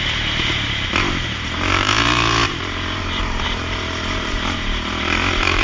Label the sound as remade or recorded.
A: remade